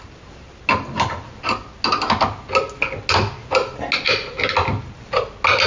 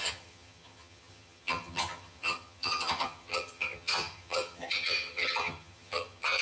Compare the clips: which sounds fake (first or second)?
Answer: second